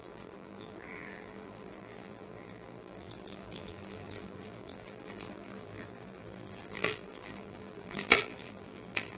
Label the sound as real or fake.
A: fake